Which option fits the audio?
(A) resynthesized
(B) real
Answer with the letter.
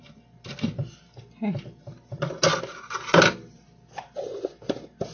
B